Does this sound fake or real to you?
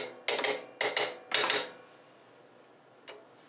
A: real